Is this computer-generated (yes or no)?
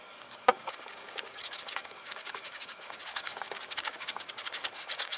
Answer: yes